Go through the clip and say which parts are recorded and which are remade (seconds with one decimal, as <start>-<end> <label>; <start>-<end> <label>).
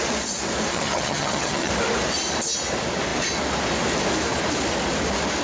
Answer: 0.0-0.7 recorded; 0.7-1.7 remade; 1.7-5.4 recorded